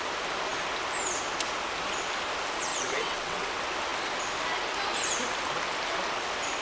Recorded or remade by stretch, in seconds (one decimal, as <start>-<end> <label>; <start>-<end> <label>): 0.0-2.7 recorded; 2.7-3.5 remade; 3.5-6.6 recorded